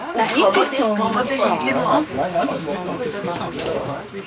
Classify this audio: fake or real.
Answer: fake